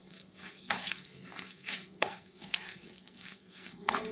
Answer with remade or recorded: remade